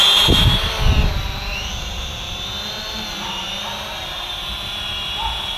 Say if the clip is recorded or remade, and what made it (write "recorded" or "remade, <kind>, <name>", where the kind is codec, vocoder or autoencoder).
remade, vocoder, BigVGAN v2